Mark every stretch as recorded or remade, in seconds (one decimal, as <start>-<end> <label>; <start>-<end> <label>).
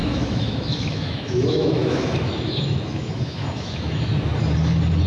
0.0-4.1 remade; 4.1-5.1 recorded